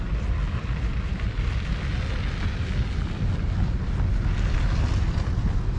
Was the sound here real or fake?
real